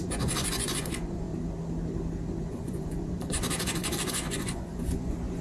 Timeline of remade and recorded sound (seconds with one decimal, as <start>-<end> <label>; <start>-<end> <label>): 0.0-1.3 remade; 1.3-2.5 recorded; 2.5-5.4 remade